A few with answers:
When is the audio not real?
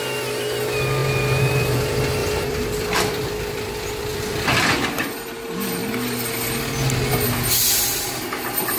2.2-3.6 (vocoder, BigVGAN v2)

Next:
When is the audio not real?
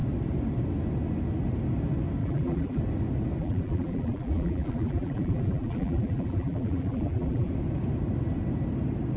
2.2-2.8 (vocoder, BigVGAN v2); 3.4-7.5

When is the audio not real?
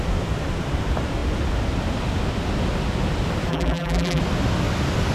3.5-4.2 (vocoder, BigVGAN v2)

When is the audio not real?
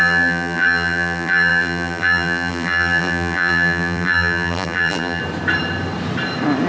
0.0-5.2 (vocoder, BigVGAN v2)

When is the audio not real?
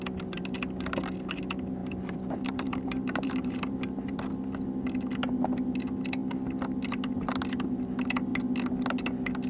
1.8-4.2 (vocoder, BigVGAN v2)